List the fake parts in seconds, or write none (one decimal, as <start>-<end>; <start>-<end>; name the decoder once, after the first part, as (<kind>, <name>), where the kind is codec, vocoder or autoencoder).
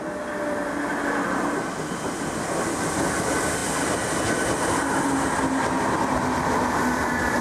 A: none